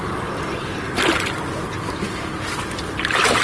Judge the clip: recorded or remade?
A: recorded